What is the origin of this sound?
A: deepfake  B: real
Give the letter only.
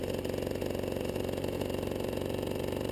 A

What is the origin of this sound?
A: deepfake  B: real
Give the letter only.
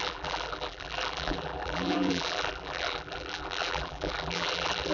A